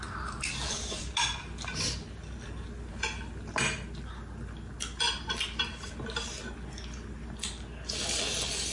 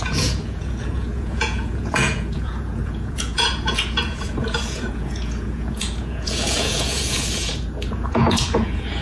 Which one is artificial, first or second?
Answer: second